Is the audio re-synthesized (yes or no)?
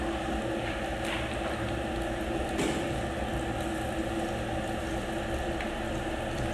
no